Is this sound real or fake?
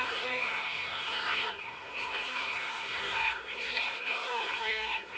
fake